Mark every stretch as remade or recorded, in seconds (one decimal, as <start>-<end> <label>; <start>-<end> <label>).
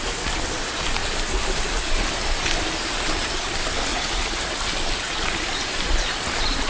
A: 0.0-3.9 recorded; 3.9-4.4 remade; 4.4-6.7 recorded